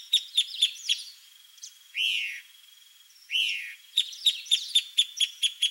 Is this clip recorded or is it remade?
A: remade